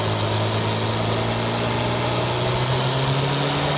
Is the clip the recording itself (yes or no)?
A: yes